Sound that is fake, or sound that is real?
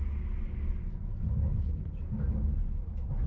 real